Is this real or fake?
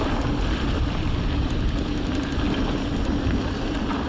real